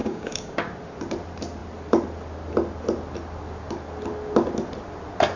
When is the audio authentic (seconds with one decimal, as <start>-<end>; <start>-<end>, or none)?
0.6-5.4